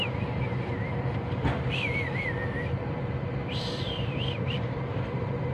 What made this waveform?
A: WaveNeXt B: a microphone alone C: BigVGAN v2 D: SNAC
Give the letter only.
C